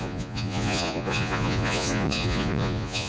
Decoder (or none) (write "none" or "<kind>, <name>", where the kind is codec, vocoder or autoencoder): vocoder, Vocos